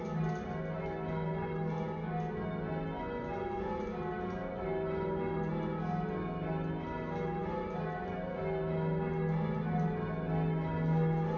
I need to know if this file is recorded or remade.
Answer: recorded